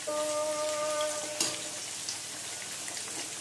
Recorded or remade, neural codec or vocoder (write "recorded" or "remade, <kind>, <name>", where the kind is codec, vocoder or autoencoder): recorded